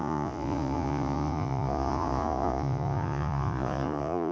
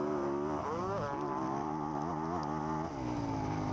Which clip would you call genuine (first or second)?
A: second